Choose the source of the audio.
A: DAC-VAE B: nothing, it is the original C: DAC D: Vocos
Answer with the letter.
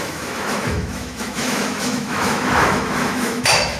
A